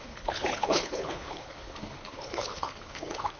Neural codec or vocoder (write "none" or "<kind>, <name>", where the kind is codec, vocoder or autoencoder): codec, HILCodec